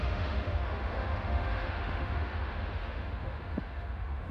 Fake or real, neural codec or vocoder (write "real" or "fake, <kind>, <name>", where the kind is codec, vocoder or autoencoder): fake, autoencoder, DAC-VAE